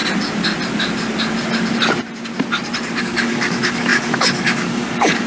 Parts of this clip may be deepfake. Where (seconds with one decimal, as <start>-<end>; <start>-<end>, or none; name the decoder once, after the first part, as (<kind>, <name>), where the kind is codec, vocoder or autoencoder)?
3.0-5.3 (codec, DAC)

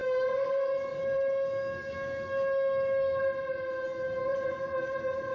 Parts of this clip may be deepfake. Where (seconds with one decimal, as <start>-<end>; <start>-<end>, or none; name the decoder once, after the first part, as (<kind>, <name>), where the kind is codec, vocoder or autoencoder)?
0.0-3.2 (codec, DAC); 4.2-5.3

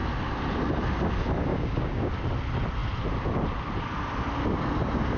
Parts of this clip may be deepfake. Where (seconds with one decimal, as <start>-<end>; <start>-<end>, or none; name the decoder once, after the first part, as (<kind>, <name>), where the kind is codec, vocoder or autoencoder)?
1.5-2.1 (codec, DAC)